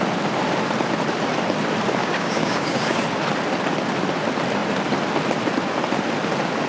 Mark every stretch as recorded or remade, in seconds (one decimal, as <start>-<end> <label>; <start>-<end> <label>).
0.0-2.0 recorded; 2.0-3.0 remade; 3.0-6.7 recorded